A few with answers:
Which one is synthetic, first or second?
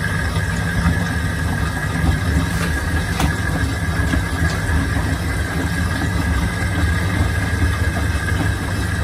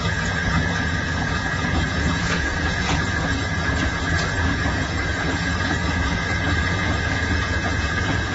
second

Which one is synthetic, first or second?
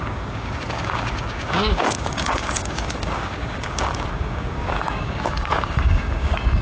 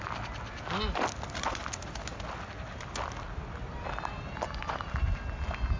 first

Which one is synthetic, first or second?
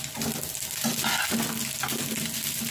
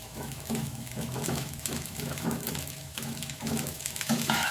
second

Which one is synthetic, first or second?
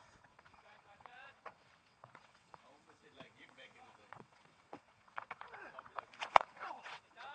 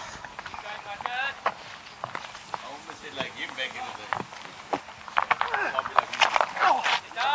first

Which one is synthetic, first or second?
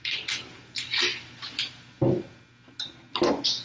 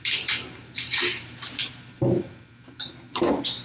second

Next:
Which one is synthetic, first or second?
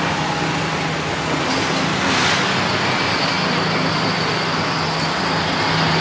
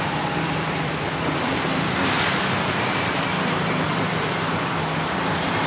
second